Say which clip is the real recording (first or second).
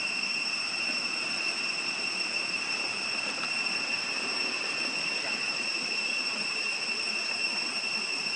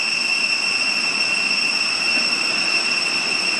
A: second